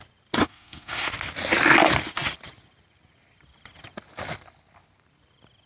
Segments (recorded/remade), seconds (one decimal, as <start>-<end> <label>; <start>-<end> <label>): 0.0-0.4 recorded; 0.4-1.1 remade; 1.1-5.7 recorded